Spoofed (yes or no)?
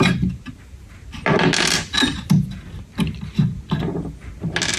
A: no